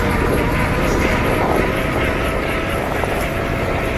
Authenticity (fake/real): real